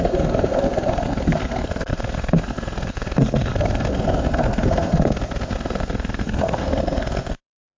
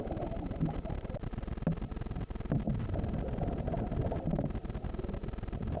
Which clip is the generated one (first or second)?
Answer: first